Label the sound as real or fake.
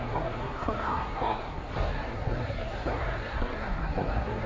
fake